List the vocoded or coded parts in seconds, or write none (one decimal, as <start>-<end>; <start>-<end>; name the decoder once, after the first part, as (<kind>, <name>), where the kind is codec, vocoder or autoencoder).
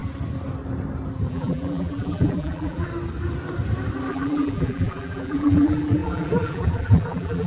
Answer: 1.3-2.9 (vocoder, BigVGAN v2); 4.1-7.5